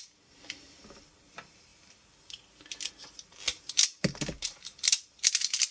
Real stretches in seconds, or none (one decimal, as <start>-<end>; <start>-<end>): 0.0-3.5; 5.3-5.7